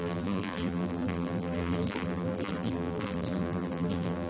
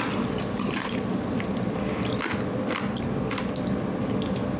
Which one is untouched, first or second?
second